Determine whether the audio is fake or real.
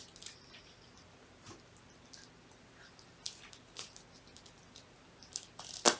real